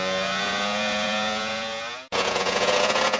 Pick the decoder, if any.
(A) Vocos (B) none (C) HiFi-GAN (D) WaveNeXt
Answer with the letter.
A